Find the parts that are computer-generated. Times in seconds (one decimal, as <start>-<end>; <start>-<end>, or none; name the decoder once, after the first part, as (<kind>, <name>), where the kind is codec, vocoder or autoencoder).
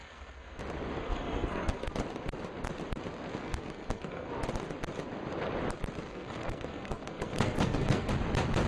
0.0-0.6 (codec, SNAC); 1.0-1.9; 3.4-4.3; 6.1-8.1